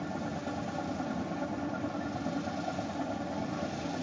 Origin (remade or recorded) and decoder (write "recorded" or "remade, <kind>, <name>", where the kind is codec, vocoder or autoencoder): recorded